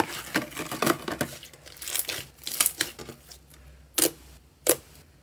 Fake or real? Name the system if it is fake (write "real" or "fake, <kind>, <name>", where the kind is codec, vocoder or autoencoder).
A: real